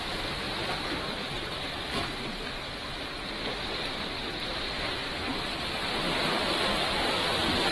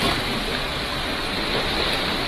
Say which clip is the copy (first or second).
first